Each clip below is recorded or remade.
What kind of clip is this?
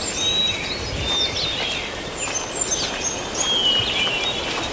recorded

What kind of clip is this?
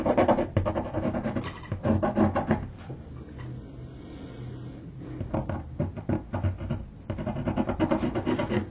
recorded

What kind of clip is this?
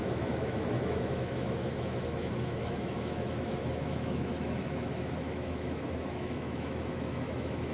remade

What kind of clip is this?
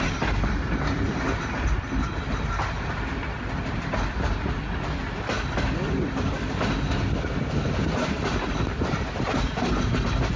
recorded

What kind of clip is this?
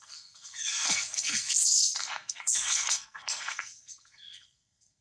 remade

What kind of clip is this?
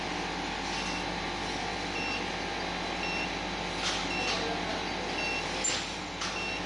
recorded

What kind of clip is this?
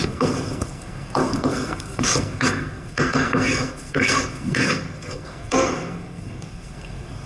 remade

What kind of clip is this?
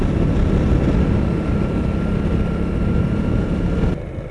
recorded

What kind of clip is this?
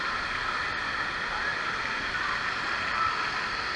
recorded